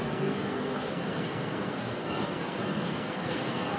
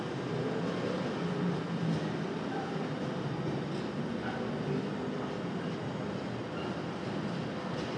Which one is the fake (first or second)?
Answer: first